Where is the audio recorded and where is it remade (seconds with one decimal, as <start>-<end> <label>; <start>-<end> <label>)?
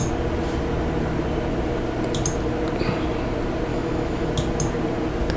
0.0-3.7 recorded; 3.7-4.3 remade; 4.3-5.4 recorded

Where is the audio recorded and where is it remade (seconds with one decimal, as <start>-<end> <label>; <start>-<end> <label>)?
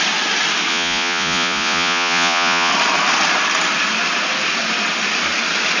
0.0-0.7 recorded; 0.7-2.7 remade; 2.7-5.8 recorded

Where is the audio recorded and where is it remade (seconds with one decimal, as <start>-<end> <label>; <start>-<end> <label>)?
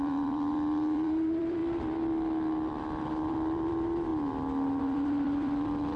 0.0-1.6 remade; 1.6-3.1 recorded; 3.1-4.1 remade; 4.1-4.8 recorded; 4.8-6.0 remade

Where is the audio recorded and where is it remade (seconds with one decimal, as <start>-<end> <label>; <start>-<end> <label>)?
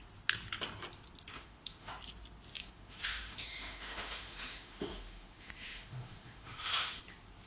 0.0-1.3 recorded; 1.3-1.9 remade; 1.9-2.5 recorded; 2.5-7.0 remade; 7.0-7.5 recorded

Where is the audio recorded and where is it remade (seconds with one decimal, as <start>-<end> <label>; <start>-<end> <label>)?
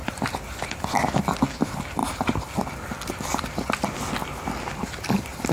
0.0-5.5 remade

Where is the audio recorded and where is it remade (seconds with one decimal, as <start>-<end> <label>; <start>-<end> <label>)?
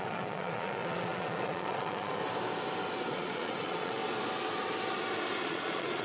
0.0-2.2 remade; 2.2-3.1 recorded; 3.1-4.0 remade; 4.0-5.4 recorded; 5.4-6.0 remade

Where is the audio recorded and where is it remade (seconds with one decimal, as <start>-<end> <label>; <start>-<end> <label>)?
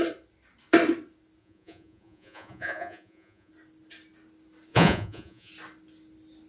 0.0-1.4 recorded; 1.4-3.5 remade; 3.5-4.7 recorded; 4.7-5.5 remade; 5.5-6.5 recorded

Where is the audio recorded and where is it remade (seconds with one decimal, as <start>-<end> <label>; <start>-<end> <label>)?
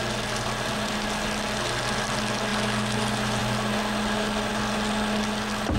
0.0-5.8 recorded